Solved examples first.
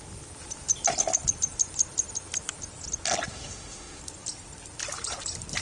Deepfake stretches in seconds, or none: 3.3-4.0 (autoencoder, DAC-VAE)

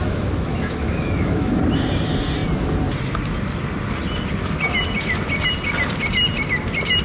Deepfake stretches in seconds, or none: 0.0-1.6 (autoencoder, DAC-VAE)

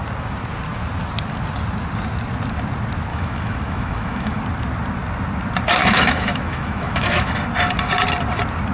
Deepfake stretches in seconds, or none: 3.1-4.4 (autoencoder, DAC-VAE); 5.8-7.3

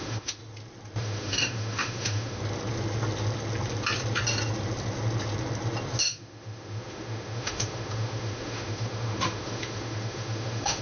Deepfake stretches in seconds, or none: 0.0-0.4 (autoencoder, DAC-VAE); 1.0-2.4; 6.0-10.8

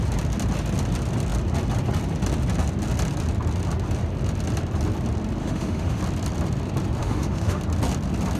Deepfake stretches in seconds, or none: 5.4-6.0 (autoencoder, DAC-VAE); 7.0-7.6

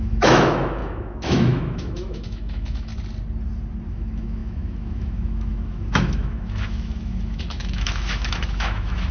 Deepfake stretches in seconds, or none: 0.0-2.9 (autoencoder, DAC-VAE); 3.9-9.1